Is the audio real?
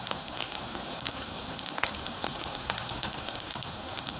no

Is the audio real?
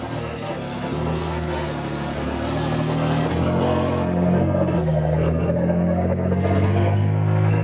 no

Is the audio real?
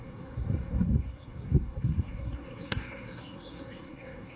no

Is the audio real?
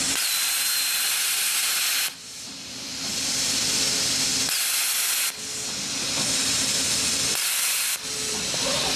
yes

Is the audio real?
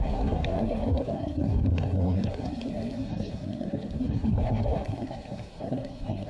no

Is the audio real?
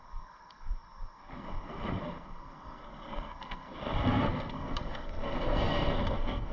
no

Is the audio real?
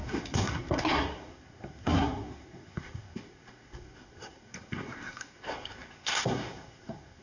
no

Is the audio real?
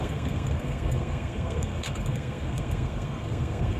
no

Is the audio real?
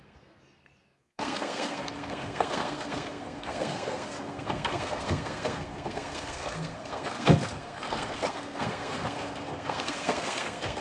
no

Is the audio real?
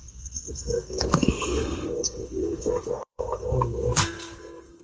no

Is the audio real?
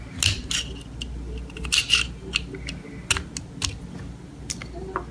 yes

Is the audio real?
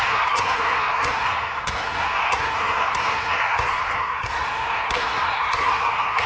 no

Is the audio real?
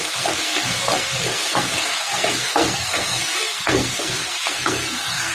no